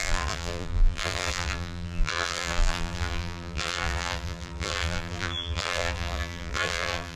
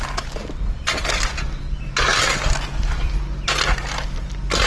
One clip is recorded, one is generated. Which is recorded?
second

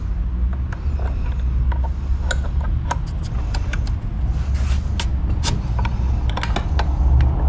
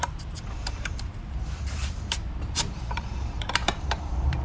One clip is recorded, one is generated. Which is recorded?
first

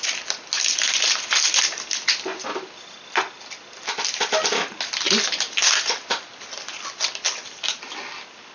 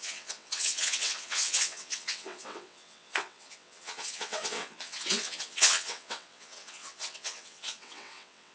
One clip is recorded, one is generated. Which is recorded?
first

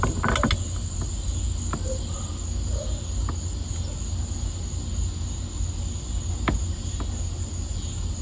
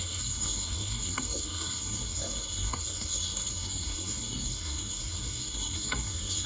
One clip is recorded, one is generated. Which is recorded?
first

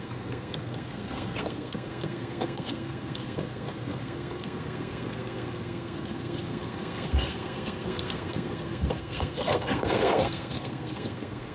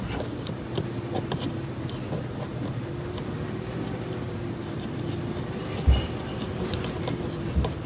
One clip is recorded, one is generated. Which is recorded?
second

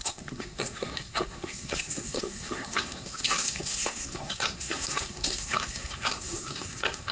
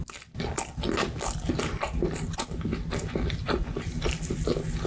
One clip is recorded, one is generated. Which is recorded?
second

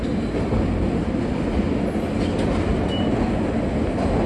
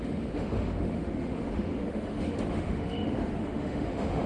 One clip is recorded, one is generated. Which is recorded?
first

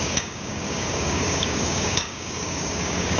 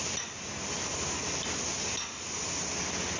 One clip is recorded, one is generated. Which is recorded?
second